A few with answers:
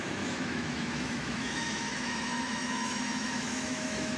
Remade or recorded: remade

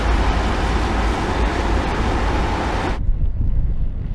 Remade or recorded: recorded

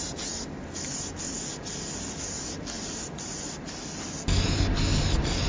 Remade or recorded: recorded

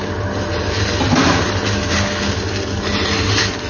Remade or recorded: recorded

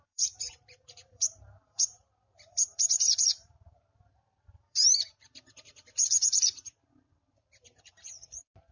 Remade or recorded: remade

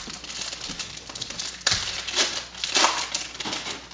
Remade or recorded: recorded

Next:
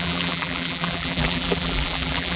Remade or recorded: remade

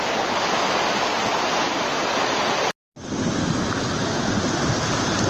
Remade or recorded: recorded